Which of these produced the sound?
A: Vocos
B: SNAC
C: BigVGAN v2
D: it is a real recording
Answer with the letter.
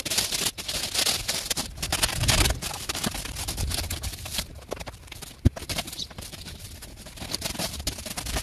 C